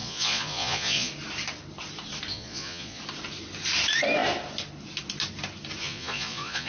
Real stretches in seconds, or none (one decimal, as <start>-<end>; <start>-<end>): 1.1-2.3; 3.0-5.8